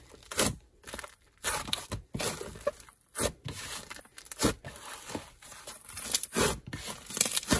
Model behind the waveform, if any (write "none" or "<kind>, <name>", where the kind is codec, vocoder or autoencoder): none